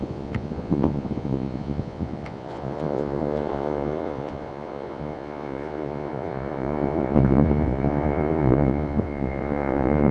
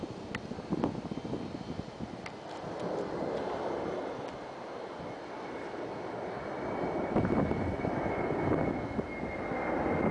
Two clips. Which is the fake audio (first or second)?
first